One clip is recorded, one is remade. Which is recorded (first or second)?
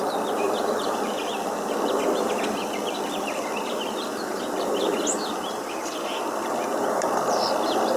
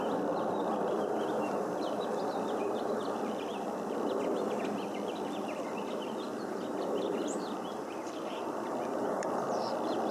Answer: first